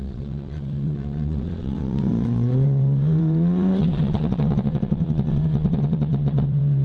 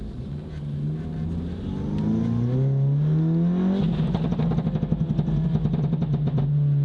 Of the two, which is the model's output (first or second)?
first